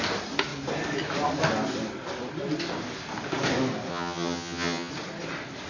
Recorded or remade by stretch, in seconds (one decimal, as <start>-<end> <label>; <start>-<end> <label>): 0.0-3.9 recorded; 3.9-4.9 remade; 4.9-5.7 recorded